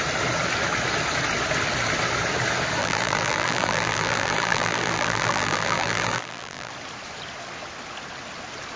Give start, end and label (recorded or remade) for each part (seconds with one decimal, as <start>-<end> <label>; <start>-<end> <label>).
0.0-2.8 recorded; 2.8-6.7 remade; 6.7-8.8 recorded